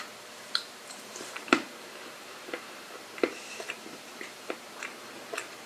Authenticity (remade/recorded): remade